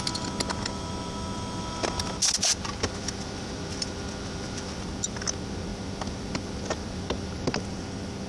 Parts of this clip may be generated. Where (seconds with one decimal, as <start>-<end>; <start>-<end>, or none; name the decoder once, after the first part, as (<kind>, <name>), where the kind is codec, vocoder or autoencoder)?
none